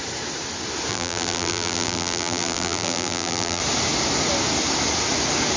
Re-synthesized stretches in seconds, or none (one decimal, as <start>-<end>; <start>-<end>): 0.9-3.6